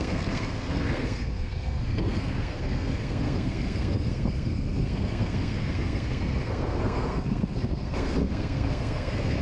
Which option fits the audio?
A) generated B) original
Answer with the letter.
A